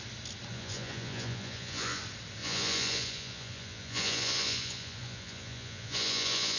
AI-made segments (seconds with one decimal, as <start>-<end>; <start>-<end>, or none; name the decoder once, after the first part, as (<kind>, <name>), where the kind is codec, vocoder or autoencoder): 0.5-2.0 (vocoder, Vocos); 2.4-6.6